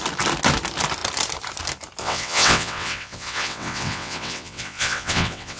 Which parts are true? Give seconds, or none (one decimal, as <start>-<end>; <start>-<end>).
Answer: 0.0-2.0